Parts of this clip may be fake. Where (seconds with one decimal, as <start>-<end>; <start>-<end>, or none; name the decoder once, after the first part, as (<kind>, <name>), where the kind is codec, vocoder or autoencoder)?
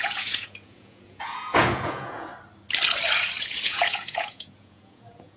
0.0-2.3 (vocoder, Vocos); 3.4-5.4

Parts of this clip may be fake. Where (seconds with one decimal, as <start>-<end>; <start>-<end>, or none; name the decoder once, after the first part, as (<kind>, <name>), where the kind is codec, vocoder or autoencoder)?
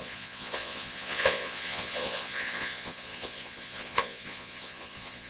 0.0-5.3 (vocoder, Vocos)